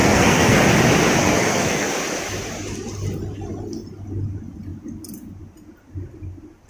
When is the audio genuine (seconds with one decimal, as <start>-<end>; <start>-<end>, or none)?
0.6-1.2; 1.9-6.7